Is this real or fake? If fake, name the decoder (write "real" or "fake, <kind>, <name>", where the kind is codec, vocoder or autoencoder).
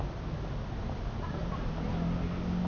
real